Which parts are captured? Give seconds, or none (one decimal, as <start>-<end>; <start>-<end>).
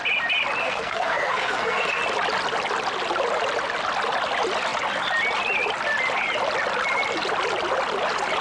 0.0-0.6; 2.0-8.4